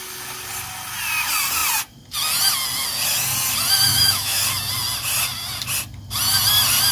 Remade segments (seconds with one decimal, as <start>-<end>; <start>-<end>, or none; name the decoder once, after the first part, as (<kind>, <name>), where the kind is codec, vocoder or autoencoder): 3.9-4.4 (autoencoder, DAC-VAE)